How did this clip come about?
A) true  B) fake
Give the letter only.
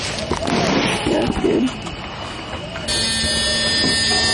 A